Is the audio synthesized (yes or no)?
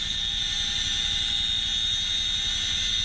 no